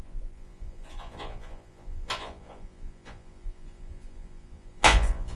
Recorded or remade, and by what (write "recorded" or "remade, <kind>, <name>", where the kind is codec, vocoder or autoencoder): remade, vocoder, Vocos